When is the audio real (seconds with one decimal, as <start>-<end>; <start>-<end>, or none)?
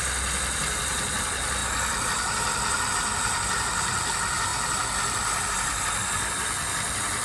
0.0-7.2